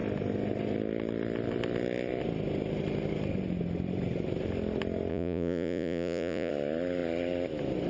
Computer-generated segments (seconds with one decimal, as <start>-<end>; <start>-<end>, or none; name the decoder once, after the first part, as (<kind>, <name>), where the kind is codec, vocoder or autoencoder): 5.1-6.5 (vocoder, Vocos)